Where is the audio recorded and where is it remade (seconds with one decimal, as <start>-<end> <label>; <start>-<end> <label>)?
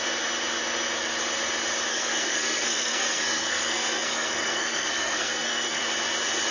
0.0-1.9 recorded; 1.9-5.8 remade; 5.8-6.5 recorded